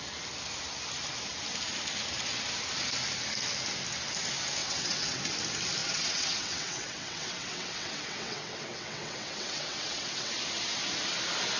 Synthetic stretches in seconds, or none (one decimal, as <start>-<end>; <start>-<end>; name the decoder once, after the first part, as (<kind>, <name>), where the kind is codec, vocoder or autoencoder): 4.6-5.2 (vocoder, WaveNeXt); 5.8-10.3